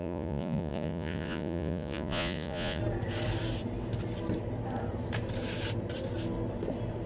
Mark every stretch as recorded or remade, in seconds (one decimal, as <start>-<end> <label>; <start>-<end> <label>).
0.0-2.8 remade; 2.8-7.1 recorded